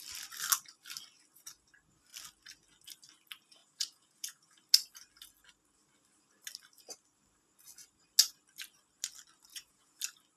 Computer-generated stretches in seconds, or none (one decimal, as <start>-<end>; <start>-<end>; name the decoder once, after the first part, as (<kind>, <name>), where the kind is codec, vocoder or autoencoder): 3.6-4.6 (vocoder, Vocos); 9.5-10.0